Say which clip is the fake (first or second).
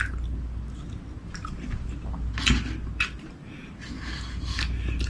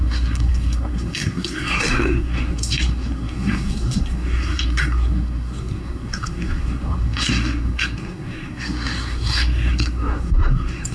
second